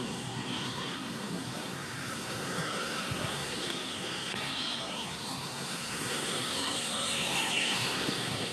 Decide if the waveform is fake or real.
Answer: fake